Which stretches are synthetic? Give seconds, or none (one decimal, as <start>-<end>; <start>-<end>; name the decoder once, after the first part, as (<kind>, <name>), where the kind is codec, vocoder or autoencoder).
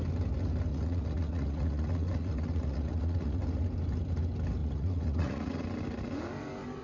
0.7-3.4 (vocoder, Vocos); 4.6-5.6